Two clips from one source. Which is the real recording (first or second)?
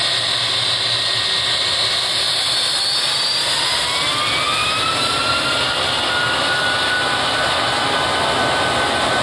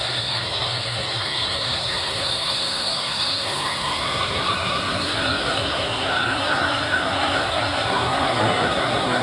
first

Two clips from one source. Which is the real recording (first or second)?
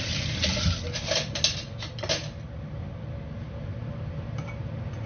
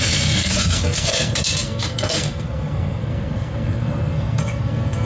first